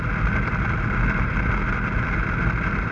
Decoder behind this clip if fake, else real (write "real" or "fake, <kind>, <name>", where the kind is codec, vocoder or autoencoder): real